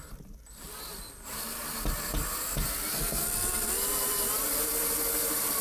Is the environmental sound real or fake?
fake